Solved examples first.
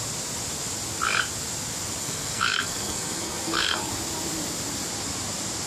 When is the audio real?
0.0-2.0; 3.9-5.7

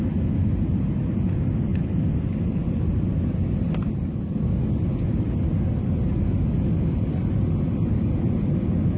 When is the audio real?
0.0-1.7; 4.6-9.0

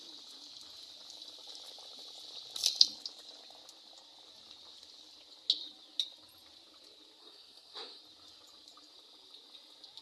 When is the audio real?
0.0-7.2; 8.0-10.0